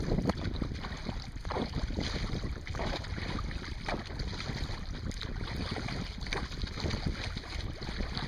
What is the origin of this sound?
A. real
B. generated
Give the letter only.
A